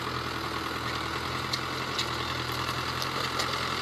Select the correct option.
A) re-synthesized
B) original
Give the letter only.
B